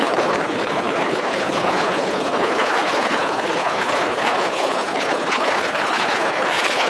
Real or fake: fake